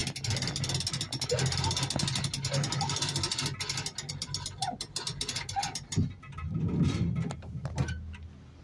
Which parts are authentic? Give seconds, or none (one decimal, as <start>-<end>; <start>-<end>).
0.0-8.6